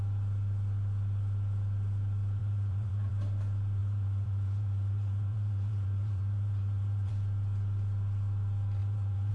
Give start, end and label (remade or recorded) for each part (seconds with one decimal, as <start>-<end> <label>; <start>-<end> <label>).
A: 0.0-2.4 recorded; 2.4-3.1 remade; 3.1-3.8 recorded; 3.8-7.1 remade; 7.1-8.8 recorded; 8.8-9.3 remade